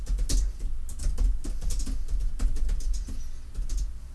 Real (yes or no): yes